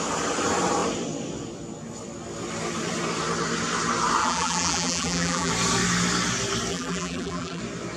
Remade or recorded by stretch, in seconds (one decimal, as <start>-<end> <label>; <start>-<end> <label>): 0.0-4.2 recorded; 4.2-5.5 remade; 5.5-6.7 recorded; 6.7-7.6 remade; 7.6-8.0 recorded